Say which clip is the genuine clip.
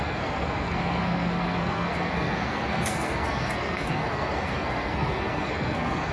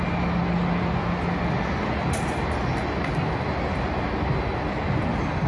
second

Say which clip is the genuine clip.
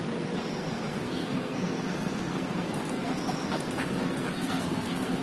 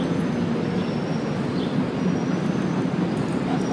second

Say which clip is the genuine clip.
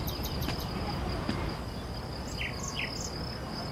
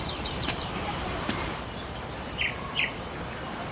first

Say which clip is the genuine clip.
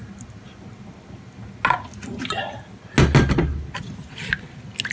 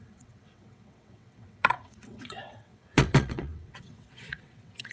first